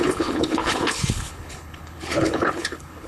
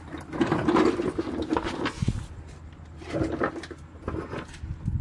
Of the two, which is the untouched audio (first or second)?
second